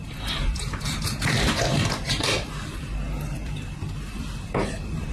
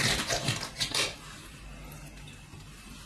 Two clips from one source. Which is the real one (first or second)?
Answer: second